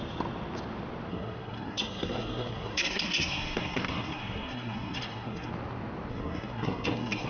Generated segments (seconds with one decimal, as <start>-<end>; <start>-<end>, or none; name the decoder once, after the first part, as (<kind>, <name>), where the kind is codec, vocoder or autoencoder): 1.1-5.5 (codec, SNAC); 6.1-7.3